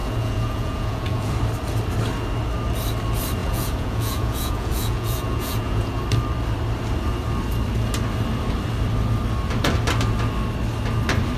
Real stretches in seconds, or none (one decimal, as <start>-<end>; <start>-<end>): 1.4-3.4; 6.0-11.4